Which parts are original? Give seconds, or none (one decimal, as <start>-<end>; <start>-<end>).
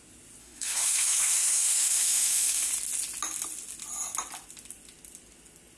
0.0-0.4; 2.7-5.8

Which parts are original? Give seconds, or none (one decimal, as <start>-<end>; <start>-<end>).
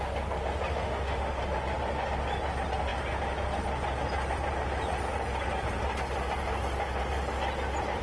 0.0-0.7; 1.4-8.0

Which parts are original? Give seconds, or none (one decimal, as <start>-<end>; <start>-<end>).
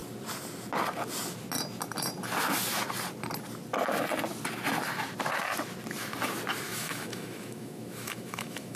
0.0-6.7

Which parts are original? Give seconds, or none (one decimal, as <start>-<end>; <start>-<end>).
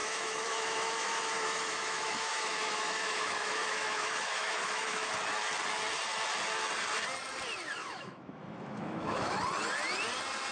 5.1-7.8; 9.4-10.5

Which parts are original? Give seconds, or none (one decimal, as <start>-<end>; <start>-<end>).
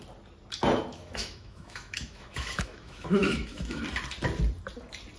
0.0-0.9; 3.8-5.2